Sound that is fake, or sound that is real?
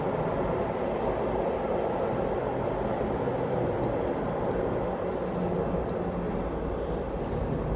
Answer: real